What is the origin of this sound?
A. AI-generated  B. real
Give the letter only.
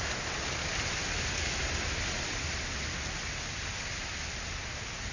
B